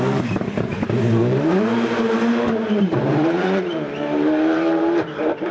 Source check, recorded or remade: remade